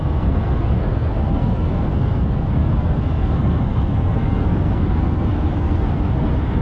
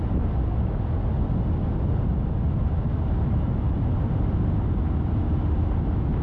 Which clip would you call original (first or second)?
second